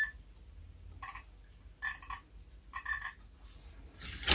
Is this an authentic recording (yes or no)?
yes